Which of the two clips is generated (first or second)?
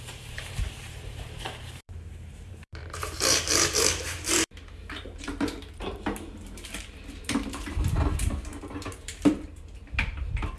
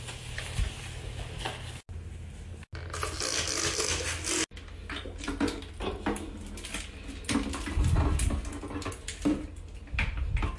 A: first